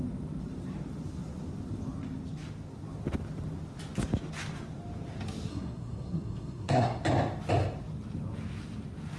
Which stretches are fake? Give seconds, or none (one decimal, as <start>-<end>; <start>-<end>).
5.5-7.0